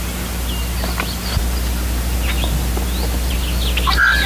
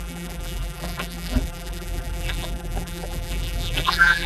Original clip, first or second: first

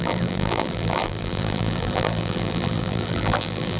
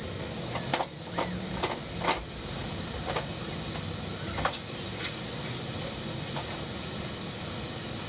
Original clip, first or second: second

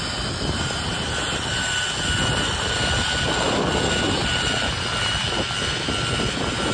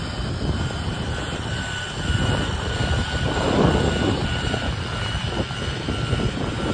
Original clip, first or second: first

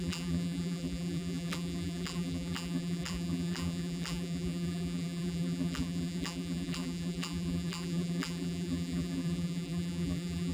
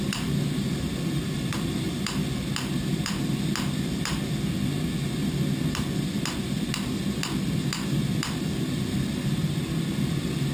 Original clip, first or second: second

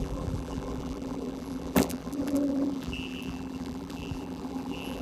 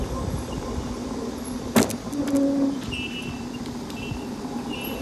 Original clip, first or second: second